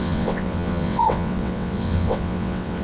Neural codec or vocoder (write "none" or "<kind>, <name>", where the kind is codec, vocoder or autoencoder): vocoder, WaveNeXt